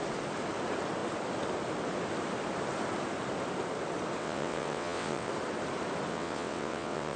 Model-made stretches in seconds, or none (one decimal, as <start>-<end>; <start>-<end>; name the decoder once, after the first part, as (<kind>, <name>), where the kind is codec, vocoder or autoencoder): 4.2-5.3 (vocoder, WaveNeXt); 6.1-7.2